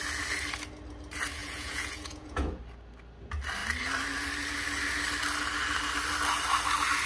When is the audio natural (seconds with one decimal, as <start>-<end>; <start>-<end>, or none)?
0.0-1.4; 2.6-7.1